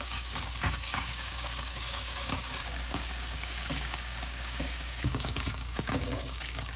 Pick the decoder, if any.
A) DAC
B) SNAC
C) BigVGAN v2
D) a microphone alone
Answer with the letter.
A